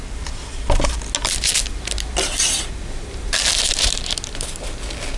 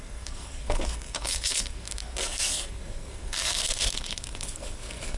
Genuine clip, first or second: first